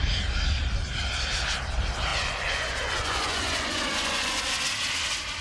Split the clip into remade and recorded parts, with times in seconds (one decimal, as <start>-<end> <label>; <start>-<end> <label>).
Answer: 0.0-2.1 recorded; 2.1-4.4 remade; 4.4-5.4 recorded